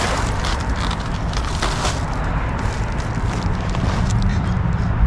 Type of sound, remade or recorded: remade